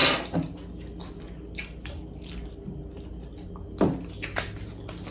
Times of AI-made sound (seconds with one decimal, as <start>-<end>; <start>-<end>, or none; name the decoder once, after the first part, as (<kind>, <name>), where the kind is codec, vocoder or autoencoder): none